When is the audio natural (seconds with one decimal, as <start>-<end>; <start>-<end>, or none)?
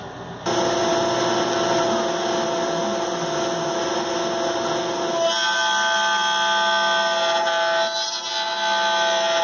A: 0.0-9.4